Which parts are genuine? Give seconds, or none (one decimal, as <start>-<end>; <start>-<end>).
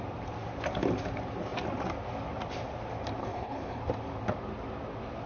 0.0-3.2; 3.8-5.3